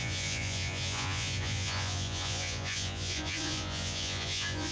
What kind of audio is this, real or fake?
fake